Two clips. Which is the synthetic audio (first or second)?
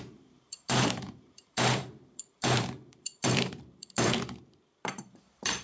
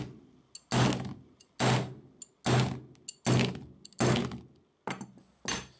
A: first